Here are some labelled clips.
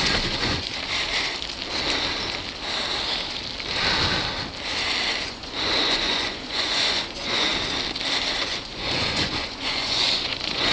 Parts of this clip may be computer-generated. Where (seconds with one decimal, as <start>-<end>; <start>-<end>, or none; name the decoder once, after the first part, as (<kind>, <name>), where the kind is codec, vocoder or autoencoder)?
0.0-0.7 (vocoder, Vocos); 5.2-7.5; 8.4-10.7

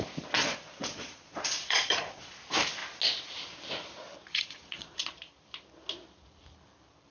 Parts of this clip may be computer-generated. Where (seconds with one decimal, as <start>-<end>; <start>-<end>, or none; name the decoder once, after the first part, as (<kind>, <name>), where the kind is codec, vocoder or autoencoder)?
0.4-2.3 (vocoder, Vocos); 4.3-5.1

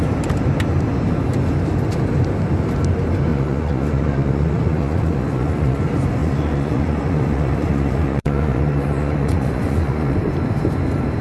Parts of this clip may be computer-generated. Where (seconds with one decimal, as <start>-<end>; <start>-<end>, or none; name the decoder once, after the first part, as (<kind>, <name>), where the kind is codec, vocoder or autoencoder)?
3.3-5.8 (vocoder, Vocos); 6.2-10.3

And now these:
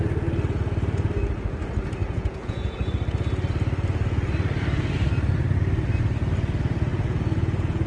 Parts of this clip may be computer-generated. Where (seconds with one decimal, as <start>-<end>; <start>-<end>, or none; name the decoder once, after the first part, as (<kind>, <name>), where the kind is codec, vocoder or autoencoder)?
2.0-2.9 (vocoder, Vocos); 6.9-7.9